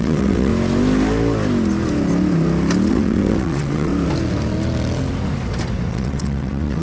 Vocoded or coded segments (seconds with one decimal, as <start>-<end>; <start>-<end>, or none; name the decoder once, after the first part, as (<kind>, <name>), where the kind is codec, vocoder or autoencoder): 0.0-0.5 (vocoder, WaveNeXt); 2.9-3.9; 5.9-6.8